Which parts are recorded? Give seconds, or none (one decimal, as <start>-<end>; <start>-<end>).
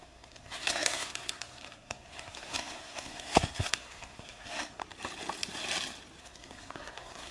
4.8-6.2